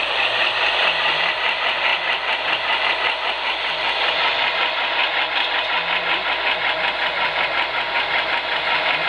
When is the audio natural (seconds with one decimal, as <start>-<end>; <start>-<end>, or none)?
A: 0.0-9.1